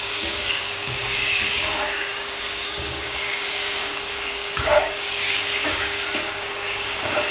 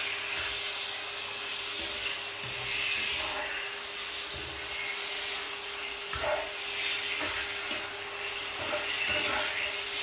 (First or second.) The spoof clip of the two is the first